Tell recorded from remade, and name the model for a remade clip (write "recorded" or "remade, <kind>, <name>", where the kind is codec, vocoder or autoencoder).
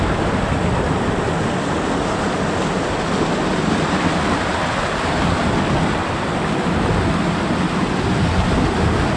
recorded